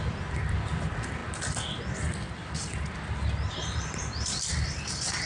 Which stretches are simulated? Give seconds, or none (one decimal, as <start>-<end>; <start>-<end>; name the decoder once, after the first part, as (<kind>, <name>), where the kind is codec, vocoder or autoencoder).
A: 0.0-1.2 (vocoder, BigVGAN v2); 3.5-5.3